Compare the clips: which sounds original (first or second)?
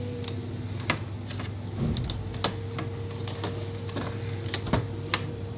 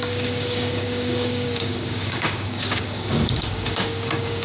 first